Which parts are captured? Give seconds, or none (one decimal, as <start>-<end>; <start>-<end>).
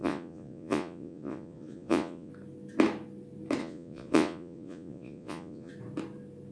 2.3-3.6; 5.7-6.5